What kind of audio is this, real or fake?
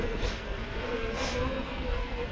fake